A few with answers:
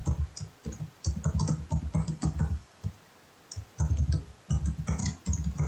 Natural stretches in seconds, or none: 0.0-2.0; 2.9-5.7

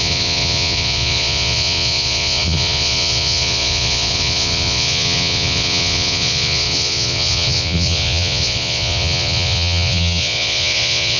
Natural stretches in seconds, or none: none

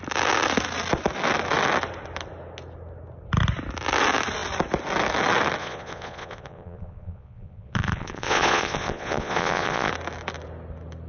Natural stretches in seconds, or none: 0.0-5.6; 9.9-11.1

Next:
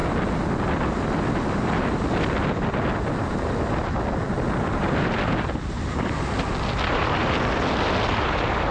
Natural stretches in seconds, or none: 0.0-8.7